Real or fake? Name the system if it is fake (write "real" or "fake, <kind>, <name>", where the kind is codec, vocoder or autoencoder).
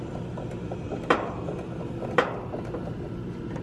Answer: real